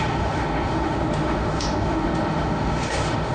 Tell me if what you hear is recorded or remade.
remade